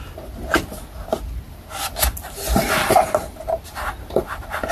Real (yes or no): yes